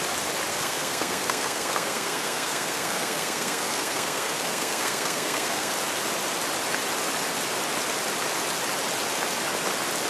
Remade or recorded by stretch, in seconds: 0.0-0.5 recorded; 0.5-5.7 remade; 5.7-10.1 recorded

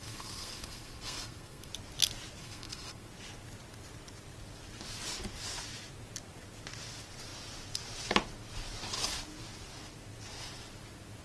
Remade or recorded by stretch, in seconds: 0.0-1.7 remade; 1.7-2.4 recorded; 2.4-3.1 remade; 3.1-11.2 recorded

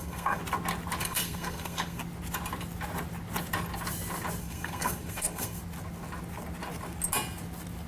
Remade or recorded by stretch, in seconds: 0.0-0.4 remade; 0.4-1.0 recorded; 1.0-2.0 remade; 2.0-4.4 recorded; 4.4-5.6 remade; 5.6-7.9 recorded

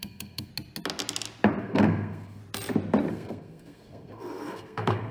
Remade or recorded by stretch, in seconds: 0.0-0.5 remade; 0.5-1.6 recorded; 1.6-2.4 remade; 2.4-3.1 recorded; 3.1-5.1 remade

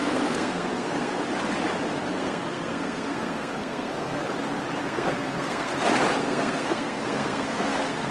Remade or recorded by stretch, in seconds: 0.0-1.2 remade; 1.2-2.1 recorded; 2.1-4.2 remade; 4.2-4.8 recorded; 4.8-5.7 remade; 5.7-6.2 recorded; 6.2-8.1 remade

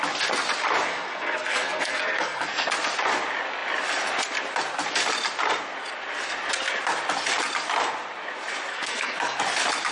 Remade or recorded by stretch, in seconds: 0.0-0.9 recorded; 0.9-2.7 remade; 2.7-8.7 recorded; 8.7-9.4 remade; 9.4-9.9 recorded

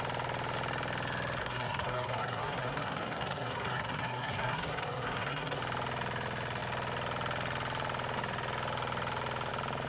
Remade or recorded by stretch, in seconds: 0.0-1.4 recorded; 1.4-5.6 remade; 5.6-9.9 recorded

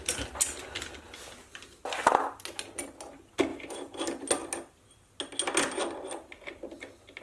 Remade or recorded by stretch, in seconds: 0.0-7.2 recorded